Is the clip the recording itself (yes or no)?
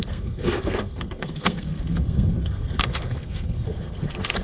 no